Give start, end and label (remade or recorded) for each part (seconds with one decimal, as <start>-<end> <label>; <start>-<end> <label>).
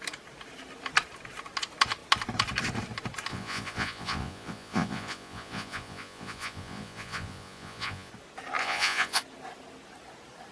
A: 0.0-3.3 recorded; 3.3-8.1 remade; 8.1-8.6 recorded; 8.6-9.2 remade; 9.2-10.5 recorded